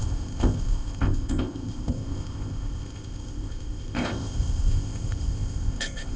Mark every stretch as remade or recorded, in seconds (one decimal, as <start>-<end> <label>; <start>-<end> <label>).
0.0-6.2 remade